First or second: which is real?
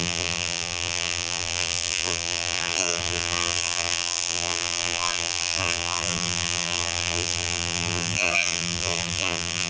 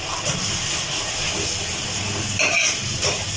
second